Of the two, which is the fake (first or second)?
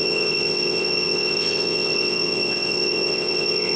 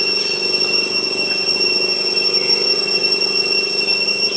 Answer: first